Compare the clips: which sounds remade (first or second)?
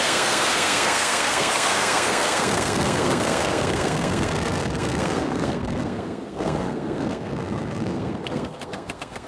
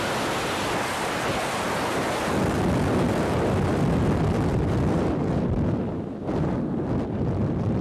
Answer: first